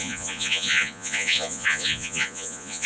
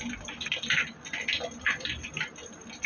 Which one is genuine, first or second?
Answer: second